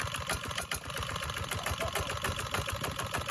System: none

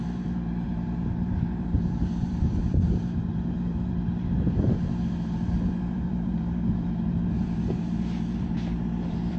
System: vocoder, BigVGAN v2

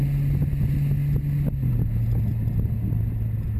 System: none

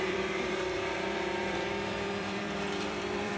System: vocoder, BigVGAN v2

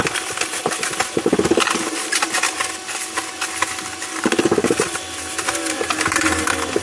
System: none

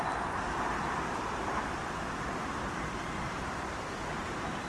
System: vocoder, BigVGAN v2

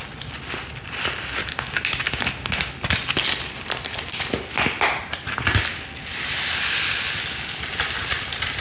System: none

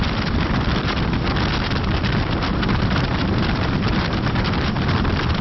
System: vocoder, BigVGAN v2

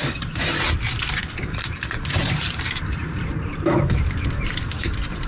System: vocoder, BigVGAN v2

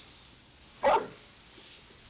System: none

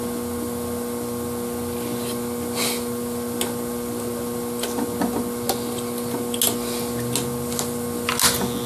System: none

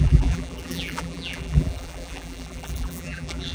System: vocoder, BigVGAN v2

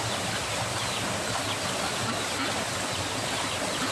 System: none